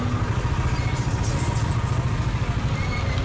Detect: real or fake real